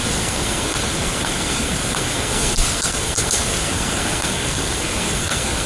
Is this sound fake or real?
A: fake